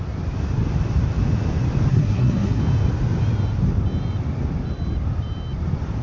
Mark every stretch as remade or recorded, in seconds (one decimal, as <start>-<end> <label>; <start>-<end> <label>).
0.0-1.9 recorded; 1.9-2.6 remade; 2.6-6.0 recorded